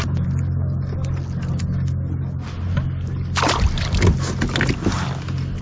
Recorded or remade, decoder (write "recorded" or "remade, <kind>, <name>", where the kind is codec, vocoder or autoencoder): recorded